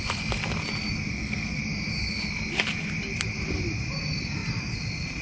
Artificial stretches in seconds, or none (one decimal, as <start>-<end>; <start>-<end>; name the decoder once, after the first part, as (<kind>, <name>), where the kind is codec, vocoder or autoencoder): 1.1-1.6 (codec, SNAC)